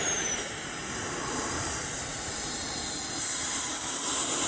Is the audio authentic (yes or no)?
no